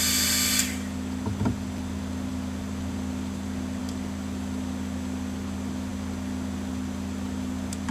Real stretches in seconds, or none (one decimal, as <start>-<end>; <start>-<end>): 0.0-7.9